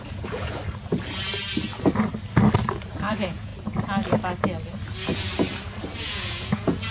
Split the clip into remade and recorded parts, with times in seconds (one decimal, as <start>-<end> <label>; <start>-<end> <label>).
0.0-0.6 remade; 0.6-3.1 recorded; 3.1-3.5 remade; 3.5-6.0 recorded; 6.0-6.9 remade